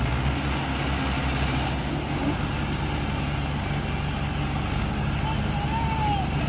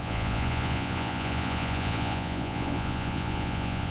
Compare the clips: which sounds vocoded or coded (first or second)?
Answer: second